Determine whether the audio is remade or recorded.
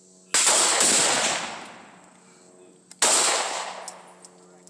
recorded